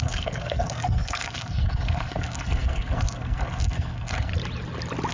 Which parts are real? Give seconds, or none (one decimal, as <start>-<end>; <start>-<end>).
4.3-5.1